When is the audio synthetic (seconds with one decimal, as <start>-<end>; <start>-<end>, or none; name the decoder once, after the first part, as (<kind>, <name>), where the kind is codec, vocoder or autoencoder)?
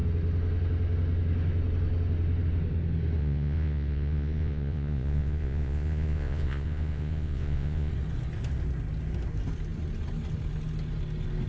3.2-7.9 (vocoder, Vocos)